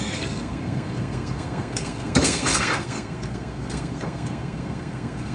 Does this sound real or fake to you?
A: fake